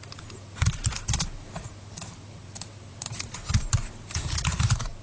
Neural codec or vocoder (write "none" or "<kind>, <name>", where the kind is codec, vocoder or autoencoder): none